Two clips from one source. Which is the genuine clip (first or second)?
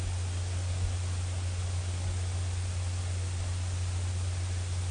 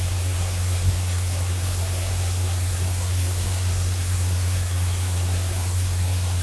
first